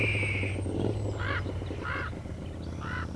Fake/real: real